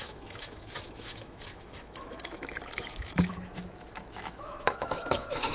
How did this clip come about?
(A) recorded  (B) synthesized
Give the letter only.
B